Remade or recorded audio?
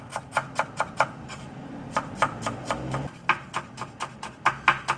recorded